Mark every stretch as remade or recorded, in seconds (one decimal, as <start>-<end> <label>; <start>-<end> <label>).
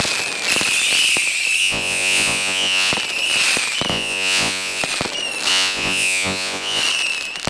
0.0-1.6 recorded; 1.6-2.9 remade; 2.9-3.9 recorded; 3.9-4.8 remade; 4.8-5.5 recorded; 5.5-6.8 remade; 6.8-7.5 recorded